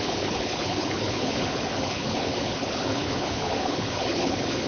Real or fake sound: fake